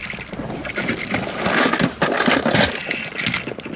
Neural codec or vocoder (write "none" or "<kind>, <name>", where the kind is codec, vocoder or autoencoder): none